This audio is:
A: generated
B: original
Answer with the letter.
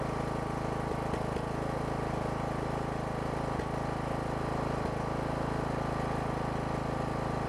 B